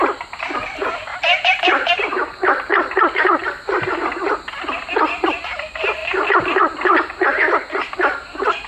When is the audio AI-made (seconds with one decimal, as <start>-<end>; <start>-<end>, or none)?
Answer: 1.1-2.7